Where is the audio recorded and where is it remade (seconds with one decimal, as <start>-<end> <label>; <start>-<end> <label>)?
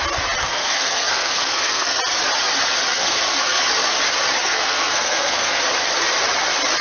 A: 0.0-0.4 recorded; 0.4-2.0 remade; 2.0-2.9 recorded; 2.9-3.6 remade; 3.6-4.4 recorded; 4.4-5.6 remade; 5.6-6.8 recorded